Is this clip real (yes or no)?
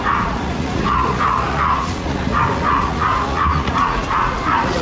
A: no